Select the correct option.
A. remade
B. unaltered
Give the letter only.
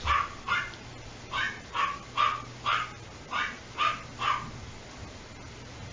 B